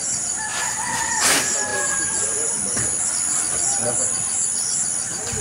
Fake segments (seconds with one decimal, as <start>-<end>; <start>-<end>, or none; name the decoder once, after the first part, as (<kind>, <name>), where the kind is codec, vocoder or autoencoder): 1.7-3.0 (vocoder, BigVGAN v2)